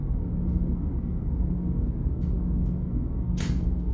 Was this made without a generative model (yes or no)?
no